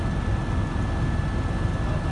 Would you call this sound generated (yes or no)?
no